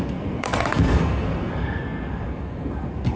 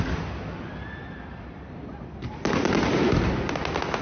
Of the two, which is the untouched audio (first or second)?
second